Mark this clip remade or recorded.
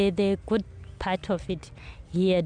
recorded